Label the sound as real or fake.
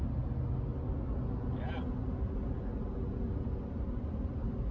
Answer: real